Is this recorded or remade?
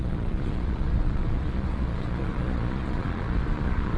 remade